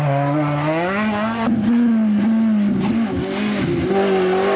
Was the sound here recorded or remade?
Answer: recorded